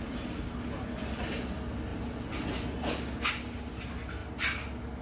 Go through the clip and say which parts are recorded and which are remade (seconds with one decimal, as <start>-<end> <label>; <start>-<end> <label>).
0.0-5.0 recorded